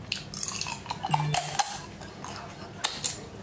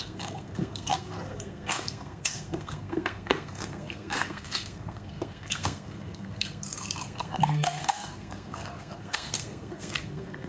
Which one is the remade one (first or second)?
second